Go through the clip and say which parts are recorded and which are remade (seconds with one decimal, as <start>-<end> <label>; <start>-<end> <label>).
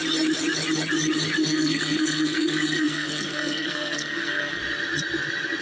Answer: 0.0-1.4 recorded; 1.4-4.6 remade; 4.6-5.6 recorded